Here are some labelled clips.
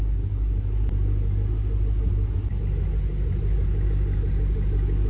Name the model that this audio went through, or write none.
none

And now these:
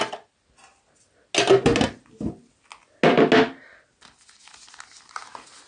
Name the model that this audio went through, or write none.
none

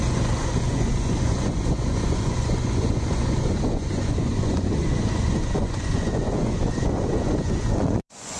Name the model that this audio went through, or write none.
vocoder, Vocos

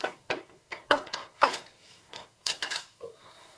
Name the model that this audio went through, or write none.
codec, SNAC